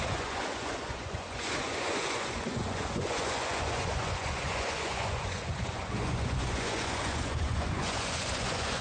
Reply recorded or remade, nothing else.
remade